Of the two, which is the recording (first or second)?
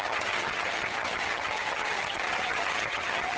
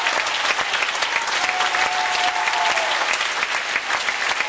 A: second